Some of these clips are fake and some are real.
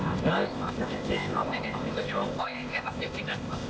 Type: fake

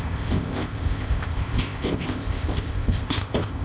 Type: fake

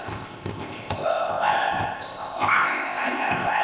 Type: fake